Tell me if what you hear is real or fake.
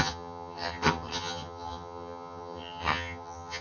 fake